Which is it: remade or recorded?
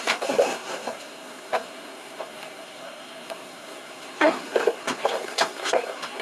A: remade